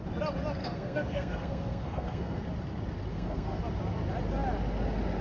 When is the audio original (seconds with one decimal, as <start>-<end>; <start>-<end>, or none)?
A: 0.0-0.6; 2.4-3.1; 3.6-5.2